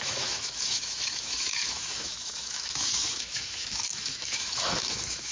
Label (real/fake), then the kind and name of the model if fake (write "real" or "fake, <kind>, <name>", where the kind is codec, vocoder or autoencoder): fake, autoencoder, DAC-VAE